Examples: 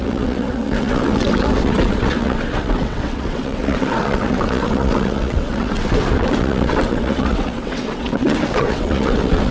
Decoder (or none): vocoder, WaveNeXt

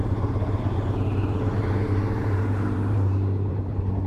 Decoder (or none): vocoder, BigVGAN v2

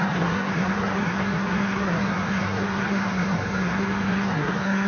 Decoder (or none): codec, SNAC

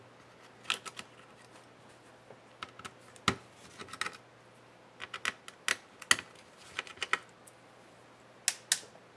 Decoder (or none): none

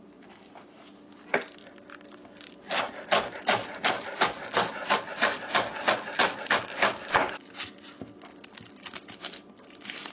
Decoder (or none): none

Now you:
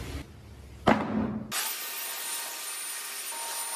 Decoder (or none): none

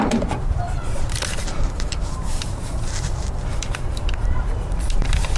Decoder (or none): vocoder, BigVGAN v2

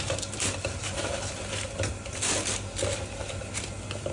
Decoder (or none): none